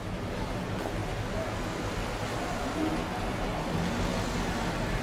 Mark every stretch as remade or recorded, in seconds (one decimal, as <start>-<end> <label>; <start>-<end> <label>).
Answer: 0.0-5.0 recorded